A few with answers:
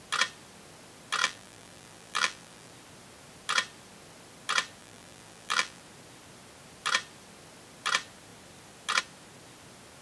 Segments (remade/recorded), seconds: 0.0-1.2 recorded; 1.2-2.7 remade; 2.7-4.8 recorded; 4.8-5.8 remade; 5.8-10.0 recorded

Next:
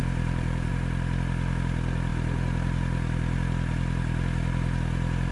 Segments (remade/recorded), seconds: 0.0-0.7 remade; 0.7-5.3 recorded

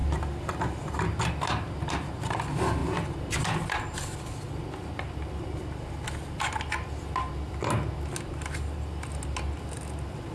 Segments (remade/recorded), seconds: 0.0-0.8 remade; 0.8-10.3 recorded

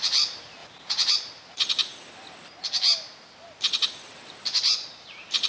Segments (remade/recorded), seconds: 0.0-1.9 remade; 1.9-3.3 recorded; 3.3-5.5 remade

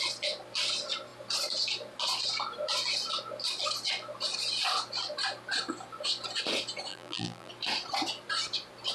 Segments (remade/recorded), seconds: 0.0-6.9 recorded; 6.9-7.5 remade; 7.5-8.9 recorded

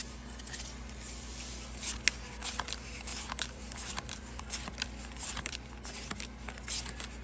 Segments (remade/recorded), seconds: 0.0-3.1 recorded; 3.1-5.7 remade; 5.7-7.2 recorded

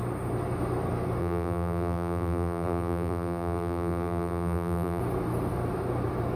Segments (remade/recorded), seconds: 0.0-1.2 recorded; 1.2-5.0 remade; 5.0-6.4 recorded

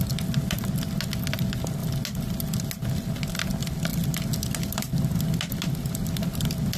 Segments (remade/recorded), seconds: 0.0-6.8 recorded